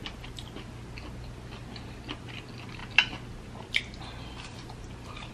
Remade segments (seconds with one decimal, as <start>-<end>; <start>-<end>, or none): none

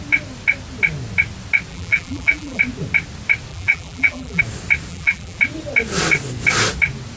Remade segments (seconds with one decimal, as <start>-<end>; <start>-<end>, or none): 1.7-2.6; 3.5-4.4; 4.9-5.4